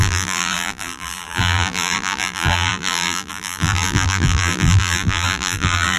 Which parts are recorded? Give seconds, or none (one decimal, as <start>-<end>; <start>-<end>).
none